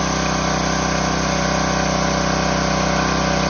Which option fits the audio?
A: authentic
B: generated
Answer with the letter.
A